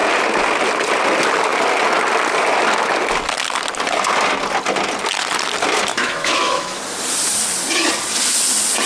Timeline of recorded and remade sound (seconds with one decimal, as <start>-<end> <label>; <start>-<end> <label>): 0.0-5.9 recorded; 5.9-6.8 remade; 6.8-8.9 recorded